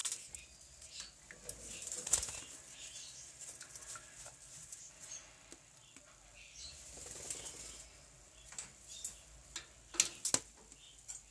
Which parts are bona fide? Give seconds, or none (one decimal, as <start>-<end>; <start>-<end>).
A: 0.0-11.3